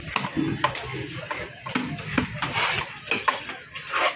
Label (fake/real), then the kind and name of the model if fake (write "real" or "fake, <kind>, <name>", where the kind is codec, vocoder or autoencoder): real